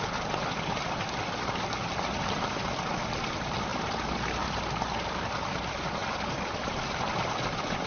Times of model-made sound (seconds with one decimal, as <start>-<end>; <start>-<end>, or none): none